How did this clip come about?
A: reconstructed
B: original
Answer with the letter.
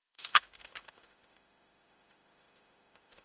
A